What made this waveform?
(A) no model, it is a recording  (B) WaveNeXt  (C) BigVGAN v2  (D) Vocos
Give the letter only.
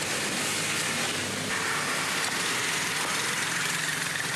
A